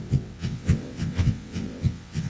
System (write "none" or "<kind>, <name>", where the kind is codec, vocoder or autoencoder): vocoder, WaveNeXt